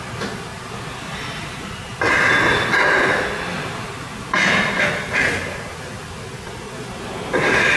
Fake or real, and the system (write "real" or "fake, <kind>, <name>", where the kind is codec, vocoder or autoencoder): real